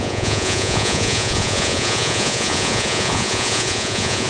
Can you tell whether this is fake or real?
fake